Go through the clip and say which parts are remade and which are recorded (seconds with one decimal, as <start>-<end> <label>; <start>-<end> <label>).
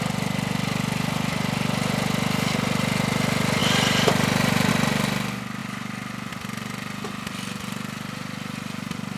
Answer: 0.0-3.6 recorded; 3.6-4.7 remade; 4.7-5.6 recorded; 5.6-6.3 remade; 6.3-9.2 recorded